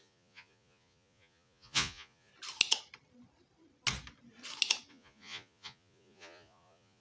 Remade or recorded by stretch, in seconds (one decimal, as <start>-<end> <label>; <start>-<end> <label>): 0.0-2.3 remade; 2.3-4.9 recorded; 4.9-7.0 remade